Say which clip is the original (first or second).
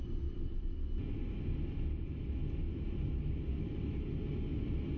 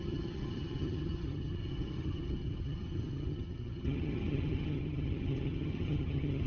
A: first